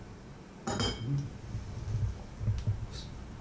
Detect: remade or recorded recorded